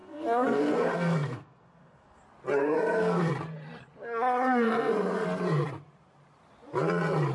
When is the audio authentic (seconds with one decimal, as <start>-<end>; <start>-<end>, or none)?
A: 2.2-2.6; 3.3-7.3